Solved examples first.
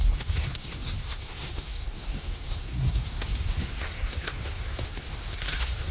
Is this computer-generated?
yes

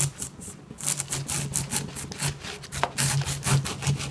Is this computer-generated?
no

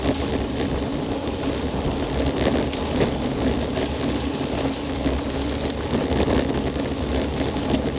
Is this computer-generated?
no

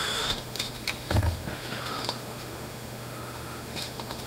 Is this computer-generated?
yes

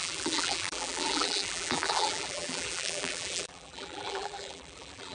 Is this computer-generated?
yes